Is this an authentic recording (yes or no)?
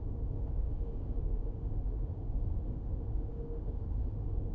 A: no